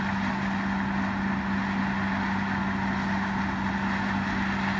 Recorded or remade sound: recorded